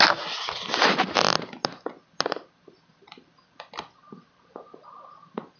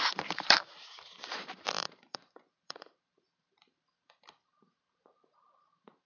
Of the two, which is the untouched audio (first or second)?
first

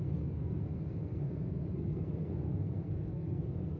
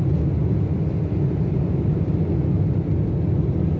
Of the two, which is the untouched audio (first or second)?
second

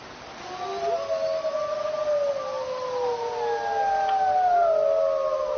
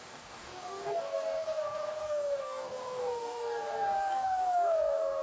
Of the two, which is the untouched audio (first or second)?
first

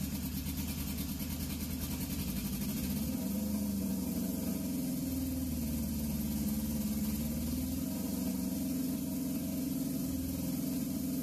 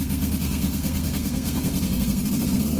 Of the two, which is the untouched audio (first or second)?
first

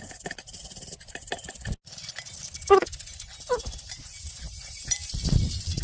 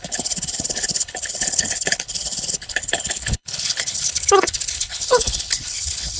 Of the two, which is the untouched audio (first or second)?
first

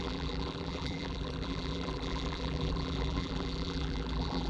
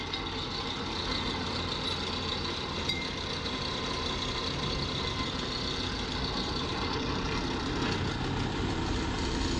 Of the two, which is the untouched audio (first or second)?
second